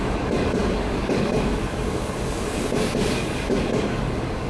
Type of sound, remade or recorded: remade